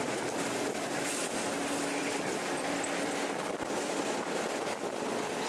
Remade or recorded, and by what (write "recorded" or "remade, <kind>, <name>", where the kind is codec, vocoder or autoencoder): recorded